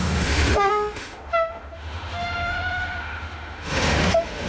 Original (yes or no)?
no